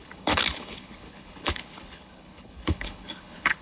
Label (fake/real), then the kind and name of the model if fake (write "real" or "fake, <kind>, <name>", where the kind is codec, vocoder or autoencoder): fake, codec, HILCodec